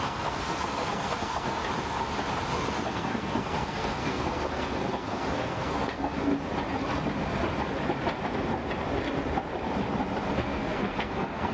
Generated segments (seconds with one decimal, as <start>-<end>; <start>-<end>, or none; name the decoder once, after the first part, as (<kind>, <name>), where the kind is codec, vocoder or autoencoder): 0.0-1.6 (codec, SNAC); 2.7-6.3; 10.3-11.5